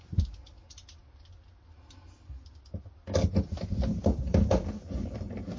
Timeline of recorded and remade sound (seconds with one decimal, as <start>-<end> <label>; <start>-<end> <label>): 0.0-5.6 recorded